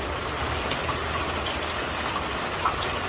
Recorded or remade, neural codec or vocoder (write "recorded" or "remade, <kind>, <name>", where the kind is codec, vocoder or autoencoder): recorded